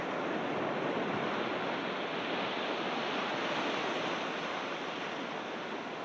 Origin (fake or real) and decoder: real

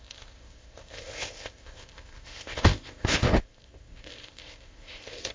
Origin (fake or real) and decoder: fake, codec, ZipCodec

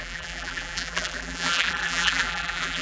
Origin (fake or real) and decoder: fake, vocoder, BigVGAN v2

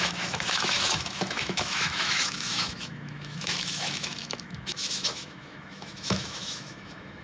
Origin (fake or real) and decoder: fake, autoencoder, DAC-VAE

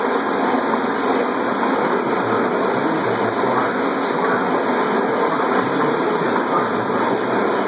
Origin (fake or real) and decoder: real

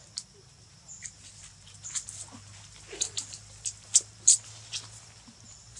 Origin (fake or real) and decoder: real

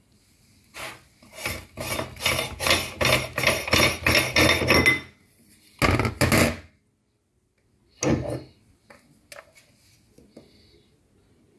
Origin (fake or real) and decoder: real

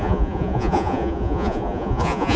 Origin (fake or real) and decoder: fake, vocoder, Vocos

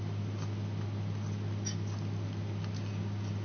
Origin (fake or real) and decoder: real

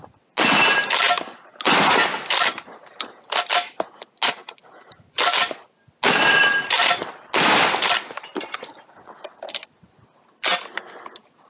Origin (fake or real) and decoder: real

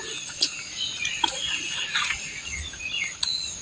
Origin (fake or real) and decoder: fake, vocoder, Vocos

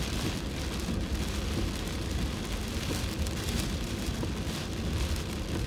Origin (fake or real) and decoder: real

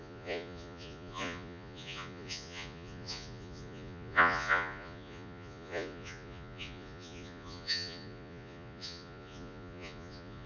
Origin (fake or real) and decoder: fake, vocoder, Vocos